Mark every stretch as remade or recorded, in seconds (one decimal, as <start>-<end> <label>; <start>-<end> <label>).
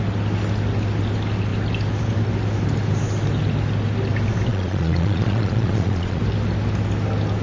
0.0-4.5 recorded; 4.5-6.2 remade; 6.2-7.4 recorded